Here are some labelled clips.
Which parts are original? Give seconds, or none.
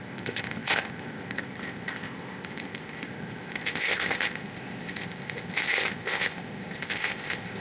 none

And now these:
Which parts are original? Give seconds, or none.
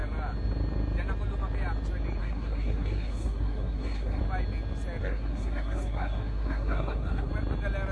0.0-2.2; 4.2-5.0; 7.3-7.9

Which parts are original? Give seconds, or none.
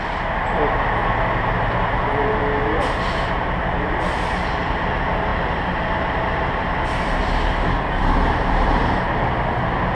0.0-5.3; 9.0-9.9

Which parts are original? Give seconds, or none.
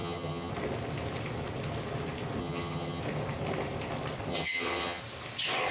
0.5-2.4; 3.0-4.3; 5.0-5.7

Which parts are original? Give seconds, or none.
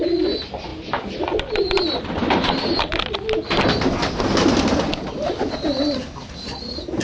0.0-7.0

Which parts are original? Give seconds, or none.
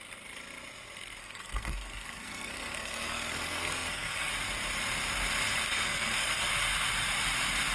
0.0-1.2; 4.3-5.7; 6.5-7.7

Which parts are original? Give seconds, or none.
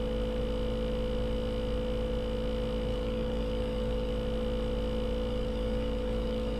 0.0-2.9; 4.1-5.3